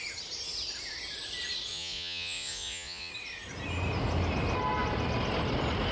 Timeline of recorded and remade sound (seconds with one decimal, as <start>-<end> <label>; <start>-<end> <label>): 0.0-1.7 recorded; 1.7-3.1 remade; 3.1-5.9 recorded